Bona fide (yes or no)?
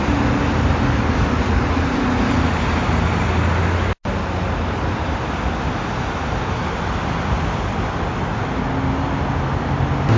yes